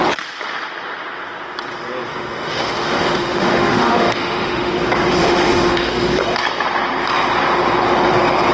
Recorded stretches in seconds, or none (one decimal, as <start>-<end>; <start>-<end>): 0.0-2.1; 4.7-5.2; 5.9-8.5